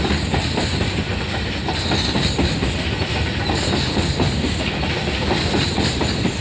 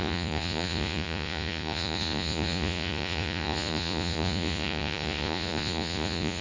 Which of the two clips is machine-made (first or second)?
second